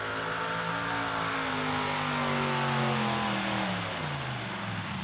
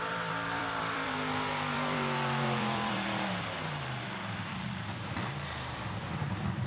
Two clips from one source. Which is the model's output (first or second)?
second